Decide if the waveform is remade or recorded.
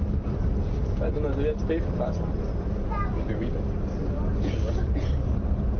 recorded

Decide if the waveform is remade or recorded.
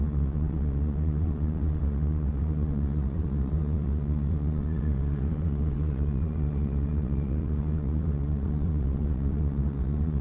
remade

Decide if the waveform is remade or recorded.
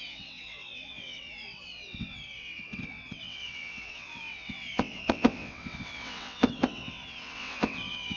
remade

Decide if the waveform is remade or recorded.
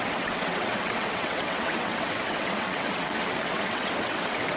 remade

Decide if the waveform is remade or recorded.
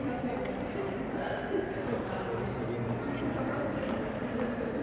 recorded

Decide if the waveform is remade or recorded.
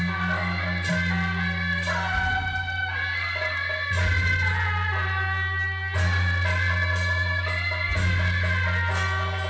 recorded